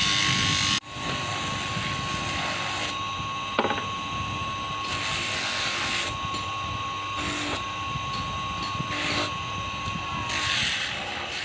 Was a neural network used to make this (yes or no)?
no